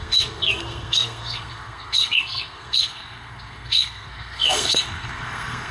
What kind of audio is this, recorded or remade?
remade